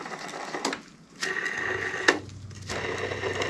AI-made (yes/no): no